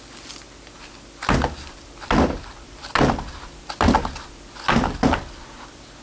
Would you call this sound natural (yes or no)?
yes